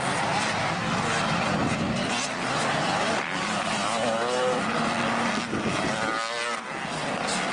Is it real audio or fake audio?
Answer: real